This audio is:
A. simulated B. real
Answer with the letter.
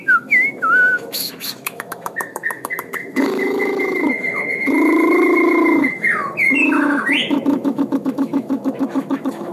A